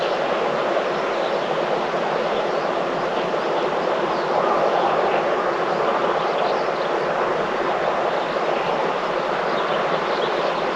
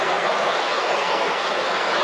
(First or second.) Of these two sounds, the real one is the first